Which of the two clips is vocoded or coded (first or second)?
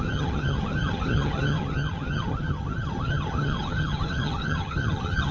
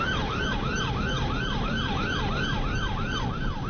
first